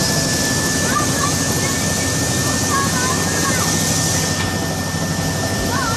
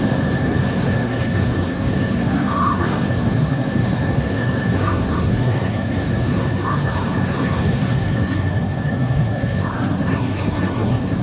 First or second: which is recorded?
first